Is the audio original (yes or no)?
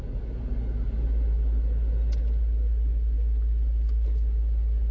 yes